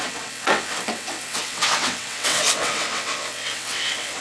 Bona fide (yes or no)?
no